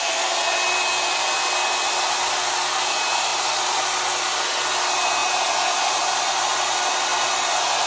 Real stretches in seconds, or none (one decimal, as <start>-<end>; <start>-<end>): 0.0-7.9